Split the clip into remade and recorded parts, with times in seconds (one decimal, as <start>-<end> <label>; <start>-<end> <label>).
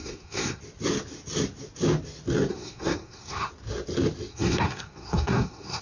0.0-0.6 remade; 0.6-2.5 recorded; 2.5-3.5 remade; 3.5-4.3 recorded; 4.3-5.8 remade